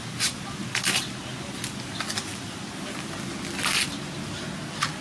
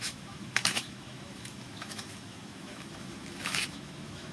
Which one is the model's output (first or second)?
second